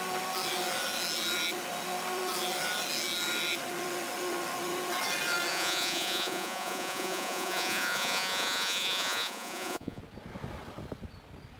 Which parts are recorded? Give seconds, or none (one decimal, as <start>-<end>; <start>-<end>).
0.0-5.5; 10.0-11.6